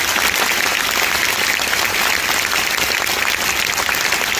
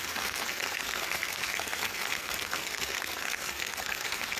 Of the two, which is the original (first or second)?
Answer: first